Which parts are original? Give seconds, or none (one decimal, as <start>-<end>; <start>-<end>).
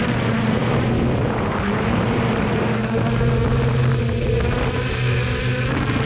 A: 0.0-0.6; 2.0-6.1